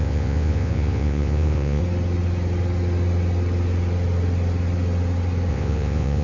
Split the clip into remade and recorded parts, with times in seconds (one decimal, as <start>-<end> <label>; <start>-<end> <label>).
0.0-1.8 remade; 1.8-5.5 recorded; 5.5-6.2 remade